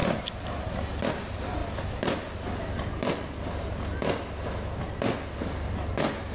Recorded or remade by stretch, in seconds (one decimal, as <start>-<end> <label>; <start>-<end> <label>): 0.0-1.6 remade; 1.6-5.4 recorded; 5.4-6.3 remade